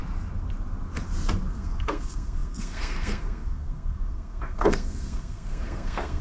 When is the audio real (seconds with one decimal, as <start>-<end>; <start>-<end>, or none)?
0.0-1.5

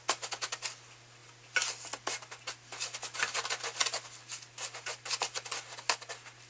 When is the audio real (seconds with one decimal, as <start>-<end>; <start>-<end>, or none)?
0.0-6.5

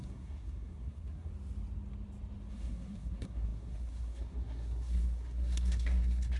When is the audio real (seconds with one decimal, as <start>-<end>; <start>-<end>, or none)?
1.3-2.5

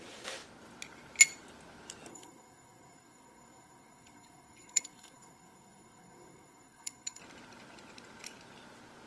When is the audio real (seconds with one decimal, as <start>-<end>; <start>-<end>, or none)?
0.0-2.1; 7.2-9.1

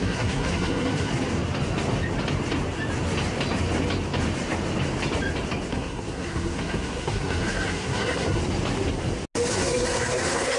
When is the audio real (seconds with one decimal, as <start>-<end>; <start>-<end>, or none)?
1.1-5.7; 8.4-9.5

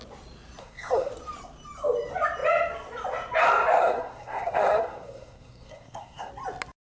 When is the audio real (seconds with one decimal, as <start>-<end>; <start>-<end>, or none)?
0.0-0.6; 1.1-3.8; 6.3-6.9